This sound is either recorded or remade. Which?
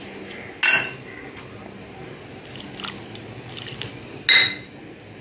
recorded